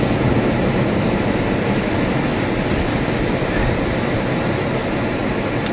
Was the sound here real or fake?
real